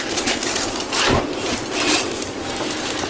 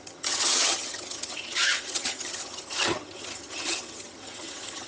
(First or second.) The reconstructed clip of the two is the second